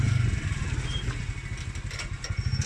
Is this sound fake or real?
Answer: real